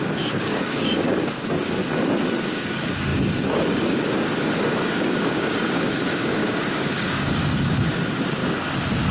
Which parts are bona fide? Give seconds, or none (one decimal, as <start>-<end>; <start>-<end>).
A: 1.8-2.4; 8.4-9.1